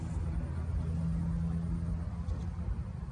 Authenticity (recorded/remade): recorded